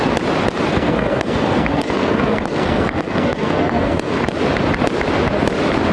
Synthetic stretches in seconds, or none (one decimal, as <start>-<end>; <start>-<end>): 0.7-4.2